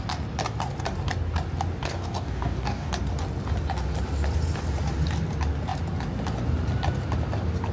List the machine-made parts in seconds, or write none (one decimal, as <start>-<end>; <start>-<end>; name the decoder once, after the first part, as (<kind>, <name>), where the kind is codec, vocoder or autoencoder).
1.9-2.9 (codec, DAC)